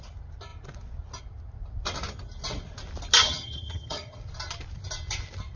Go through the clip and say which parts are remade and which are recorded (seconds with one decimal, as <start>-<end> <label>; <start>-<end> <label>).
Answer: 0.0-3.2 recorded; 3.2-4.2 remade; 4.2-5.6 recorded